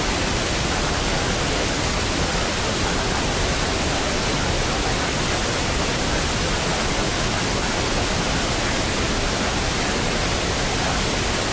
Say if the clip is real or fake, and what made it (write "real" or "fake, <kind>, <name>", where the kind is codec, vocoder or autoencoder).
real